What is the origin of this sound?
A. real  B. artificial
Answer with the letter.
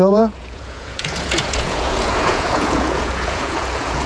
B